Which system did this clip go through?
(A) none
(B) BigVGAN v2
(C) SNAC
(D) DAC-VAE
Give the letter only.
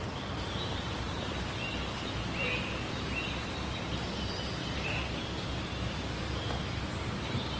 A